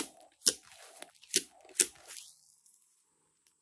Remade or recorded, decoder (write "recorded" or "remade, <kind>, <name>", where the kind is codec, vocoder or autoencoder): recorded